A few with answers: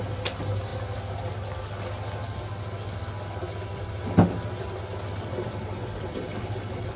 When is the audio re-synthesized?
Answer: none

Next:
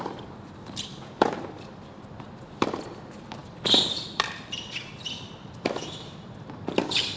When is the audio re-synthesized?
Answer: 0.0-7.2

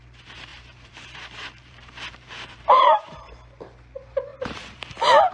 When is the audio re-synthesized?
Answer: 0.5-3.3; 4.3-5.3

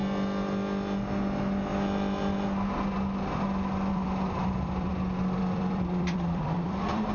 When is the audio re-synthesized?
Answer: 3.9-4.9; 5.4-7.1

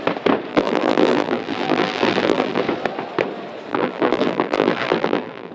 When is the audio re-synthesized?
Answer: 0.5-2.6; 3.7-5.5

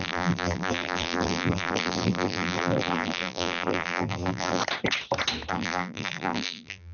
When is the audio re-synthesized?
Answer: 0.0-4.6; 5.5-6.9

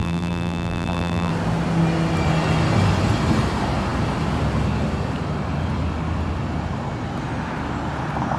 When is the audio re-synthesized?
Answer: 0.0-1.3

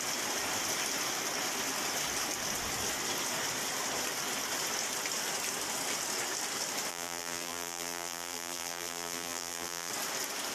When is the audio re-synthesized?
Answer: 6.9-9.9